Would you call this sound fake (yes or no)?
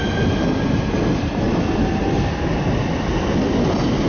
no